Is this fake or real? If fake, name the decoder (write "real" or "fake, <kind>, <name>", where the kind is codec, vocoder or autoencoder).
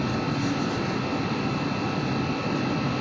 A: real